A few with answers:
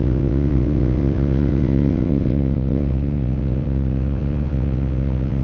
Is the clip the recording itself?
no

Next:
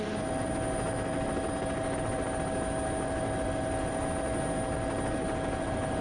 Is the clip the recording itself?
yes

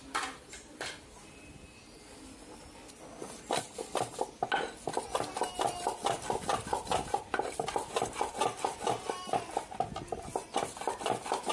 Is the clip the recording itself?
yes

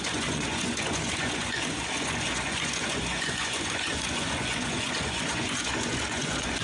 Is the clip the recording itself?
no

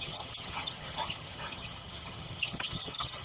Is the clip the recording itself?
no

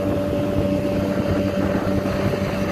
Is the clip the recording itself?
yes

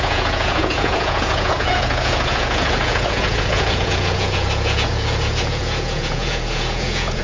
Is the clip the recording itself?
no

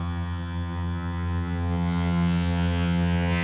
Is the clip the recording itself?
no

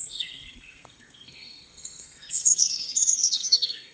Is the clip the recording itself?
no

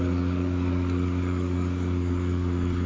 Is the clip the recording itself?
no